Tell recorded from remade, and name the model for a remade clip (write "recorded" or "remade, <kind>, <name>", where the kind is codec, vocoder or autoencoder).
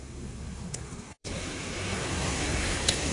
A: remade, codec, SNAC